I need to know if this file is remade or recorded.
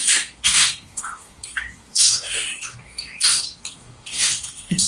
remade